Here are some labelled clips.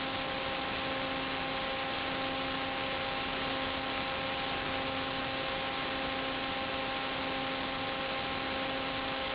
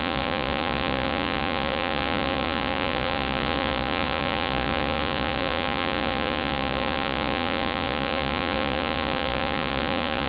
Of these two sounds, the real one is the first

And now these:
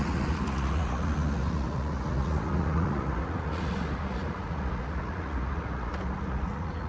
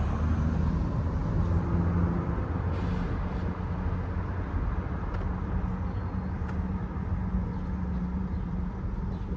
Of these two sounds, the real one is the second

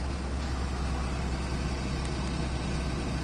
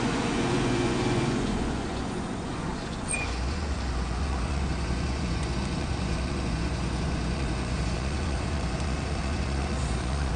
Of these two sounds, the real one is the first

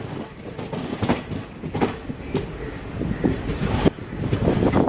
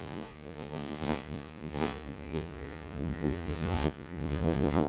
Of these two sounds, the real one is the first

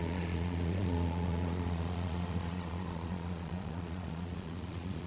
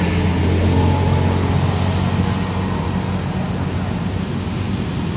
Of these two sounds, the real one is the second